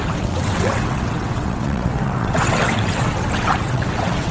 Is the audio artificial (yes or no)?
yes